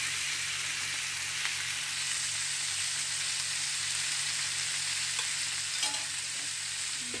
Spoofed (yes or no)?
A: no